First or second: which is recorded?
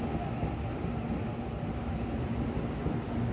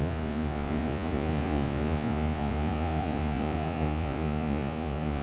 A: first